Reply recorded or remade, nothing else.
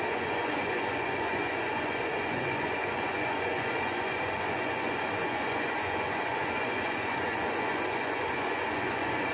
remade